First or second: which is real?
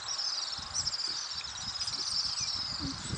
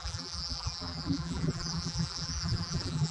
first